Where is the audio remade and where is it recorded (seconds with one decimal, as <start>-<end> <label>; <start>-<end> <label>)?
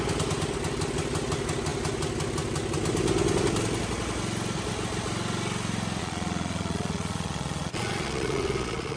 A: 0.0-6.0 recorded; 6.0-9.0 remade